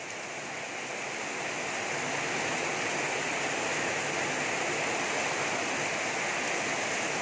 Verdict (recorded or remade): recorded